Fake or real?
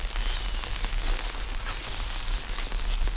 real